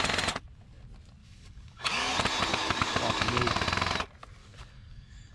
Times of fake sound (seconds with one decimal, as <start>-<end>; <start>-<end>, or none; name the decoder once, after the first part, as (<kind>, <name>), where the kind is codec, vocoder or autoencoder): 1.2-2.1 (codec, DAC); 2.5-3.5; 4.4-5.3